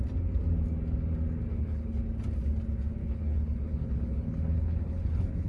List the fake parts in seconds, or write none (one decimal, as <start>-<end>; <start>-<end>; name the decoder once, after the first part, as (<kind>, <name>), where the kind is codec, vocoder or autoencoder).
1.5-2.0 (codec, HILCodec); 3.0-5.5